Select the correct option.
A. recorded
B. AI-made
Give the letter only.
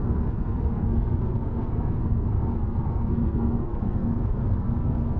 B